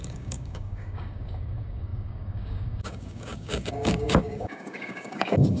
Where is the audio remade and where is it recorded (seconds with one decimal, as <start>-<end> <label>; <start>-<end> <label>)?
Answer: 0.0-5.6 remade